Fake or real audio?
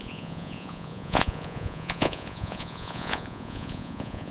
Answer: fake